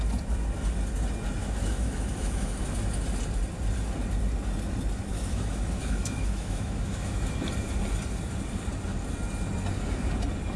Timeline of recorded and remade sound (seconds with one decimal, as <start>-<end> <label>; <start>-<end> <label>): 0.0-1.4 recorded; 1.4-2.6 remade; 2.6-5.1 recorded; 5.1-7.3 remade; 7.3-10.6 recorded